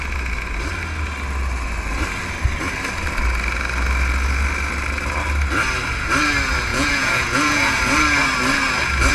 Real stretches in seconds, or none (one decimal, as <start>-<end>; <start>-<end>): 0.0-6.7; 7.8-9.1